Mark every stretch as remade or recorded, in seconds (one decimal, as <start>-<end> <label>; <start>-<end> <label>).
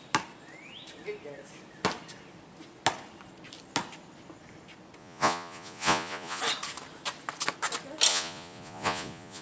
0.0-5.0 recorded; 5.0-6.4 remade; 6.4-8.1 recorded; 8.1-9.4 remade